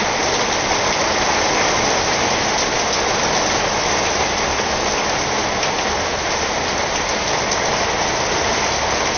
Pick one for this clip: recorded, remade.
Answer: recorded